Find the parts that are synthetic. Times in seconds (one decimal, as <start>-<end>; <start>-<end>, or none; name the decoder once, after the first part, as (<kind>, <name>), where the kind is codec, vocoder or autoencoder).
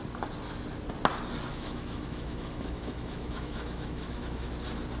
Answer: 1.5-4.5 (autoencoder, DAC-VAE)